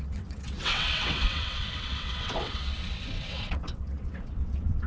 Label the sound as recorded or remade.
remade